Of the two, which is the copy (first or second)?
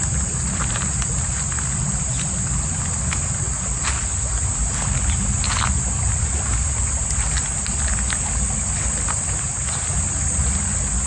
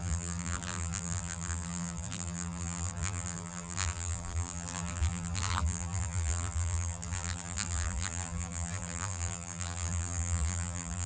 second